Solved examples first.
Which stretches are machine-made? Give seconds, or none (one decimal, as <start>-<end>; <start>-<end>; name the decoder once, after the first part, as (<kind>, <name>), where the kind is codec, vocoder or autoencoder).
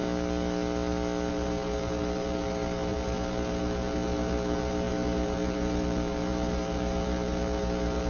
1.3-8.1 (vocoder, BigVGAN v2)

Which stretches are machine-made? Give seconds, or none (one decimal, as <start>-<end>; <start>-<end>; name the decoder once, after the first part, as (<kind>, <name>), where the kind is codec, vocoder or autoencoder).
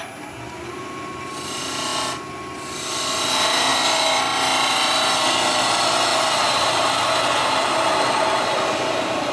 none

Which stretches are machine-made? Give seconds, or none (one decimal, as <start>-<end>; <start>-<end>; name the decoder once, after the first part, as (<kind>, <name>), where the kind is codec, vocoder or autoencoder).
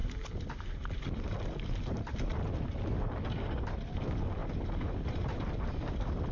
0.0-1.0 (vocoder, BigVGAN v2); 4.4-5.6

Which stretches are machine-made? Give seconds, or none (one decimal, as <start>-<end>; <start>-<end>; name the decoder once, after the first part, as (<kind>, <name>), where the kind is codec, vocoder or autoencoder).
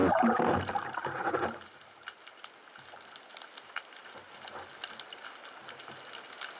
0.0-2.3 (vocoder, BigVGAN v2)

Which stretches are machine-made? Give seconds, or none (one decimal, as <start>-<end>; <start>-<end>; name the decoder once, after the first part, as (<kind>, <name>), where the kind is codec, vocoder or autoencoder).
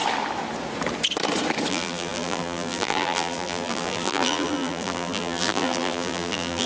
1.7-6.7 (vocoder, BigVGAN v2)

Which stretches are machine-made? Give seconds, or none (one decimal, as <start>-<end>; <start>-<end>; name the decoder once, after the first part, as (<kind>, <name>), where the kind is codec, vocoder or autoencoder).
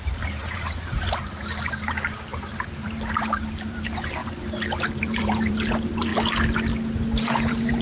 0.0-4.2 (vocoder, BigVGAN v2); 5.0-6.1; 7.2-7.8